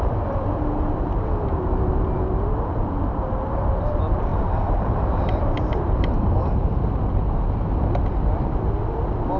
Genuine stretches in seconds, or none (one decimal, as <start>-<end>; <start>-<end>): 0.0-4.3; 6.7-9.4